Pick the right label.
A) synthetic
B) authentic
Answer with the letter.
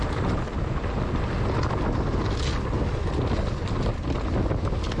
B